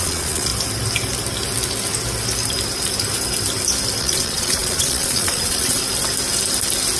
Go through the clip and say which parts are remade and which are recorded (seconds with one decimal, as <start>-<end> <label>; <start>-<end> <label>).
0.0-0.5 remade; 0.5-4.0 recorded; 4.0-5.8 remade; 5.8-7.0 recorded